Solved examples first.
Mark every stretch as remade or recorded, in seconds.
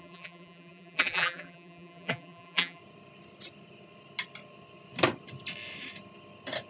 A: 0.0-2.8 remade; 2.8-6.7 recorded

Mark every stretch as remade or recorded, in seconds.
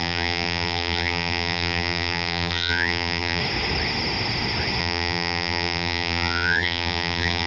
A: 0.0-3.4 remade; 3.4-4.8 recorded; 4.8-7.5 remade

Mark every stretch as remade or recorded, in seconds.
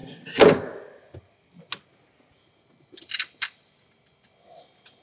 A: 0.0-5.0 recorded